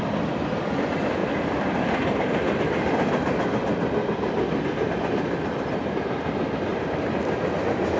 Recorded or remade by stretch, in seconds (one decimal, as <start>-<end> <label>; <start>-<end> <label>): 0.0-8.0 recorded